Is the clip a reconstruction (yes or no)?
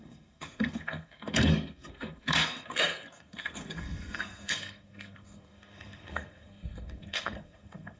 yes